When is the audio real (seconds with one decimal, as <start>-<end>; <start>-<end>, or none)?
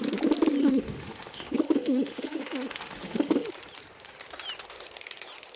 0.0-0.6; 3.5-5.6